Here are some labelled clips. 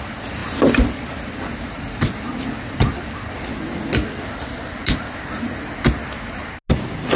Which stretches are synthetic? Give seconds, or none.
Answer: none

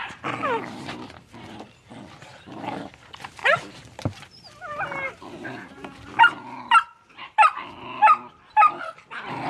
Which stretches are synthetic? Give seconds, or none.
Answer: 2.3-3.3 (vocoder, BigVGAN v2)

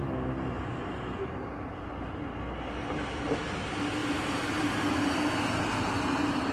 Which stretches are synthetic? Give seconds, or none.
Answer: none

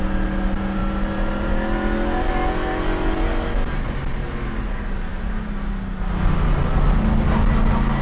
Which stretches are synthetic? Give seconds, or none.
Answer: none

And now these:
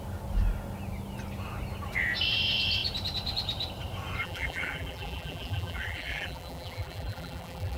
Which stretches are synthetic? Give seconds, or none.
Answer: 4.2-7.8 (vocoder, BigVGAN v2)

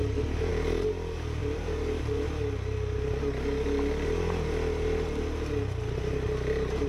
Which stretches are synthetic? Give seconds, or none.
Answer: 1.4-2.0 (vocoder, BigVGAN v2)

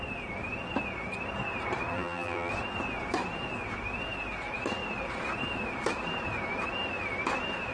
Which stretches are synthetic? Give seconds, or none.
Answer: 1.9-2.5 (vocoder, BigVGAN v2)

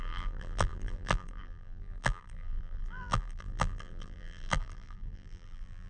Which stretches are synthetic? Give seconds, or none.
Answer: 0.0-5.9 (vocoder, BigVGAN v2)